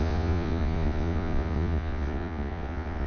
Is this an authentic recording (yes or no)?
no